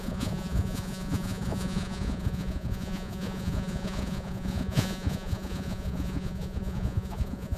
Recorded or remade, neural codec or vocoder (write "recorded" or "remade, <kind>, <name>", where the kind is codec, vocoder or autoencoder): remade, vocoder, Vocos